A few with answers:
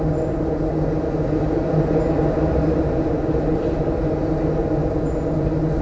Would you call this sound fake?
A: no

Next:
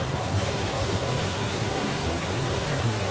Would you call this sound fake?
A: yes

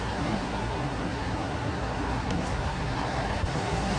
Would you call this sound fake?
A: yes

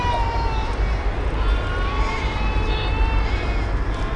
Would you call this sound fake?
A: no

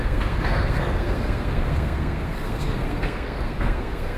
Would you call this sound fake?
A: yes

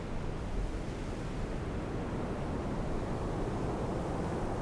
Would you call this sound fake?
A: no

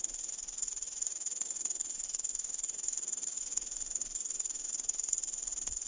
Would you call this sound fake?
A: yes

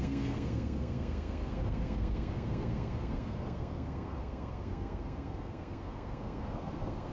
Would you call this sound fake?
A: yes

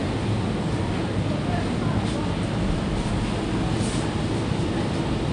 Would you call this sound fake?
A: no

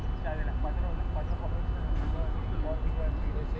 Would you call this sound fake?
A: no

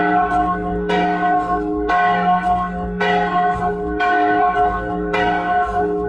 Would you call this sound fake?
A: yes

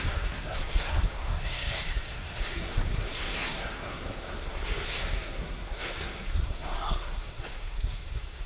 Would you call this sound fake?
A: yes